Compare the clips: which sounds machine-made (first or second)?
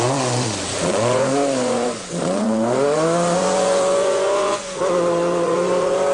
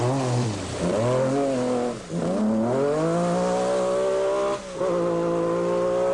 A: first